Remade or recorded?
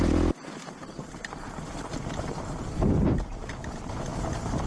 recorded